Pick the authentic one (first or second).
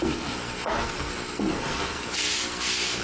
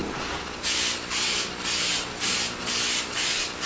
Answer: second